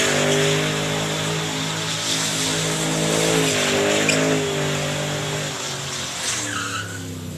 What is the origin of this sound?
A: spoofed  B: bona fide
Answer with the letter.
B